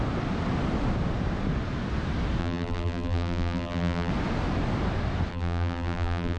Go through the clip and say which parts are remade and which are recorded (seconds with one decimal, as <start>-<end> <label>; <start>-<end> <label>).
0.0-2.4 recorded; 2.4-4.1 remade; 4.1-5.3 recorded; 5.3-6.4 remade